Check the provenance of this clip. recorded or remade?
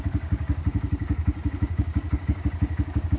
remade